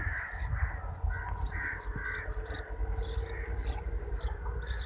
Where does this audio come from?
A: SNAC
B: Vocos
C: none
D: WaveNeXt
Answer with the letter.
C